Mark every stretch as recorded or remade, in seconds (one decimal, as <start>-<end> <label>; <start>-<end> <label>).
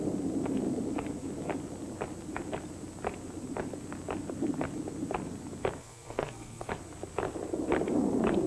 0.0-5.8 recorded; 5.8-6.7 remade; 6.7-8.5 recorded